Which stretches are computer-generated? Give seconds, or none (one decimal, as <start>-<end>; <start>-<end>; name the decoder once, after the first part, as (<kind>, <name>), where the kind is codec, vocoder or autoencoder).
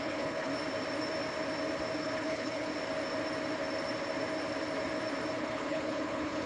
0.0-0.5 (codec, HILCodec); 2.0-2.7; 5.4-6.5